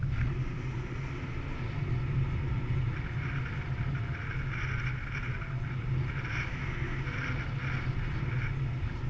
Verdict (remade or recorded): recorded